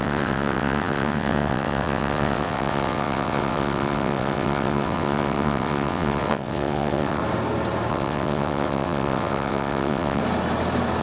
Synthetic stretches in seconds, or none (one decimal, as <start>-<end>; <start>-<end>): 0.0-7.2; 7.9-10.2